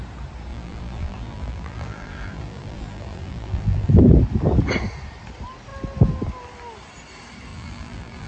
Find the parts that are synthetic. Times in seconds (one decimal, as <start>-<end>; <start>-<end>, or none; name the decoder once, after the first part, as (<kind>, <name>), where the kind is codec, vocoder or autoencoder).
0.5-3.9 (vocoder, BigVGAN v2); 7.5-8.3